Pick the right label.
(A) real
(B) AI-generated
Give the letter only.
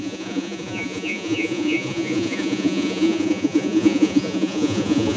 B